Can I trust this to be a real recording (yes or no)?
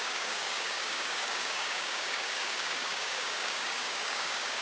no